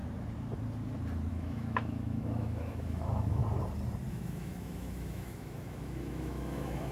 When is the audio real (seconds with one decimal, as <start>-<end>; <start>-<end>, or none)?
0.0-1.3; 3.4-4.1